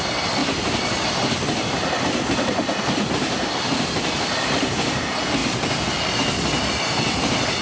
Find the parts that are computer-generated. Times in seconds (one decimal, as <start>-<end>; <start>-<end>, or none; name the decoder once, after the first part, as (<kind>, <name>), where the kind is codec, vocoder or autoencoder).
0.4-5.0 (vocoder, BigVGAN v2)